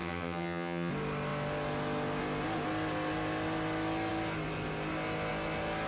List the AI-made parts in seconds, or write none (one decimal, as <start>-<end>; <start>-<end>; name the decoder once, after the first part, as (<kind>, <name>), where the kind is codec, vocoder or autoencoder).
0.0-0.9 (vocoder, HiFi-GAN)